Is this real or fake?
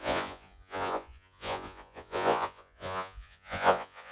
fake